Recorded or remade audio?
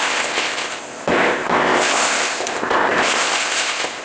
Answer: remade